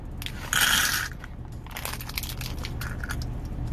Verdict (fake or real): real